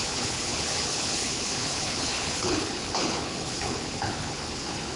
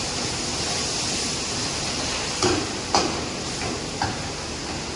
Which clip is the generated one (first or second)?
first